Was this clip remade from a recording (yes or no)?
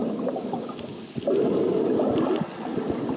no